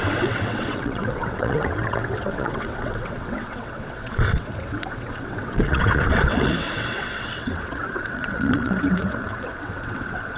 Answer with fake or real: fake